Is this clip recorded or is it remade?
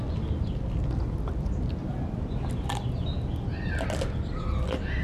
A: recorded